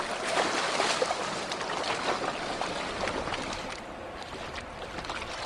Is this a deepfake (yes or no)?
no